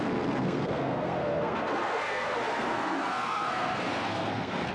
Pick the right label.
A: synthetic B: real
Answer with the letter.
A